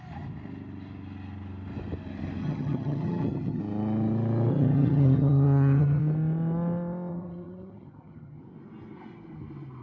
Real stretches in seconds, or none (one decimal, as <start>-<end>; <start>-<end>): 0.0-2.4; 3.6-4.5; 6.0-7.1; 8.4-9.8